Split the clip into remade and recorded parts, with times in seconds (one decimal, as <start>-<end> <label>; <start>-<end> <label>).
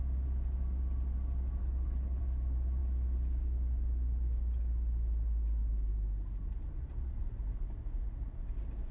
0.0-1.6 recorded; 1.6-2.2 remade; 2.2-8.9 recorded